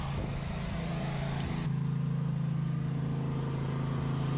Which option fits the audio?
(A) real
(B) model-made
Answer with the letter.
A